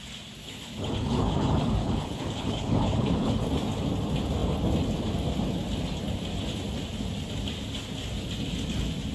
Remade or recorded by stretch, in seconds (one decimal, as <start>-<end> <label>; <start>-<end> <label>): 0.0-0.4 recorded; 0.4-3.4 remade; 3.4-9.1 recorded